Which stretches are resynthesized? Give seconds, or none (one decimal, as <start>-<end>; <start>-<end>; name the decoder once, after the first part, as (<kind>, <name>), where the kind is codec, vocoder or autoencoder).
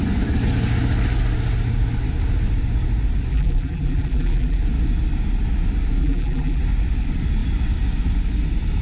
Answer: 3.3-4.6 (vocoder, BigVGAN v2); 6.0-6.6